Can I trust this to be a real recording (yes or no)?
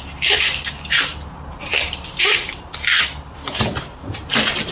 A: no